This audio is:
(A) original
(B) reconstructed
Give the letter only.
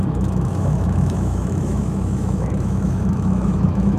B